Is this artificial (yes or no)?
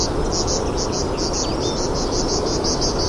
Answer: no